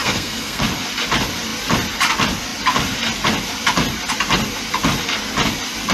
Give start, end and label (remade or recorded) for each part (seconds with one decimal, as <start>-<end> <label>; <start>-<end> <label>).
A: 0.0-0.6 remade; 0.6-5.9 recorded